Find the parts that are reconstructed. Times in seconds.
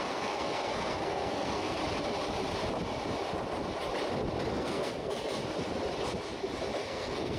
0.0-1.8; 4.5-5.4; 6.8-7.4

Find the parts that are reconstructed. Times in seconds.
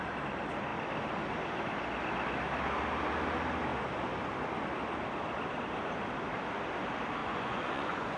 7.2-8.2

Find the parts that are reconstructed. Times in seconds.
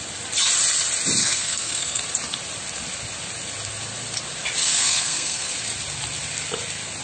1.2-2.0; 4.6-5.5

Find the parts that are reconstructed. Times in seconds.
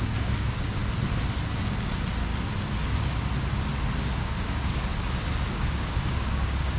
0.0-0.8; 4.2-4.9; 5.5-6.8